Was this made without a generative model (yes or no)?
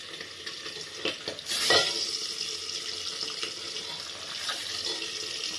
yes